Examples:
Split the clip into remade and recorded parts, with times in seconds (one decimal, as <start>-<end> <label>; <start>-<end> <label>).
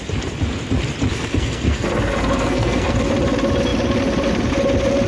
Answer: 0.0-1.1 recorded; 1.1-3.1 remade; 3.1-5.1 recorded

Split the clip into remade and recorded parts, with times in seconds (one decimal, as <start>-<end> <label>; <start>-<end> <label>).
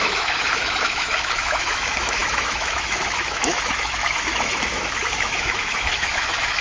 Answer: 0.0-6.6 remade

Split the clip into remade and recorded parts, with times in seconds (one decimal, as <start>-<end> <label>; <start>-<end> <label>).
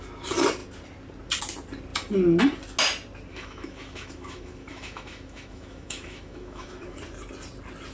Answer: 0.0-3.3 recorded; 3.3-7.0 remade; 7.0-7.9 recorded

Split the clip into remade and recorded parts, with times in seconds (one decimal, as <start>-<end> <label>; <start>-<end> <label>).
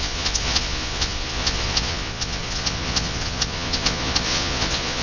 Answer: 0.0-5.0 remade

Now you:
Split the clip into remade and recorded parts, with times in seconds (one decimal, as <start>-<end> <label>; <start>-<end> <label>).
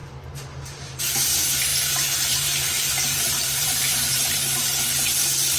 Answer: 0.0-1.0 remade; 1.0-1.7 recorded; 1.7-4.6 remade; 4.6-5.6 recorded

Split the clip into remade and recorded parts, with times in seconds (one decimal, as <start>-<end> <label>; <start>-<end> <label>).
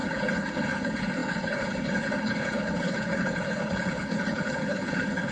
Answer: 0.0-5.3 remade